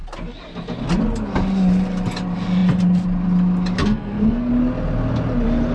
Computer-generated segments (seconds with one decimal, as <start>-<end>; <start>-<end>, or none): 3.8-4.5

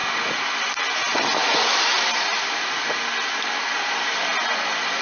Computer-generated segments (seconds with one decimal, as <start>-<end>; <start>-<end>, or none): none

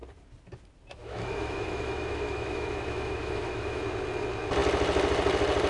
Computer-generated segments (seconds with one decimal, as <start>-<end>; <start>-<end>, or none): 1.0-3.8

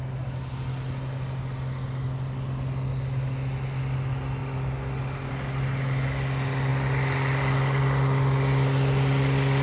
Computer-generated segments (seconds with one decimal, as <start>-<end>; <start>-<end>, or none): none

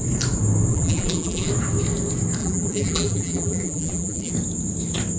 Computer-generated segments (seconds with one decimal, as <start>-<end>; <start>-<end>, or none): 0.7-1.5; 2.4-4.3

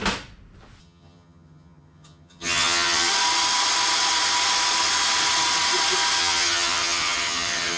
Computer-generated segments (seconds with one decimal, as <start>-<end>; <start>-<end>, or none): 0.8-3.1; 6.2-7.8

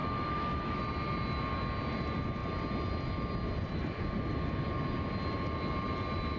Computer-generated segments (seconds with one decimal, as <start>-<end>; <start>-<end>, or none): 0.0-0.8

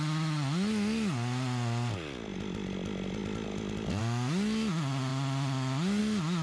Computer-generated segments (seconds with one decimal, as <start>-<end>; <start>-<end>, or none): none